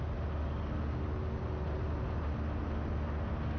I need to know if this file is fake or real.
real